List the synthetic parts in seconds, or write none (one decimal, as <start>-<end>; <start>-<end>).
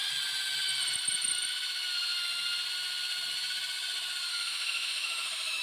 4.3-5.6